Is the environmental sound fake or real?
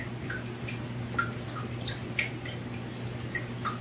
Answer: fake